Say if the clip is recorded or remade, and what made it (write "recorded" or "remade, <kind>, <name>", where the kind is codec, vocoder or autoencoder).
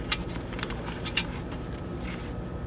remade, vocoder, BigVGAN v2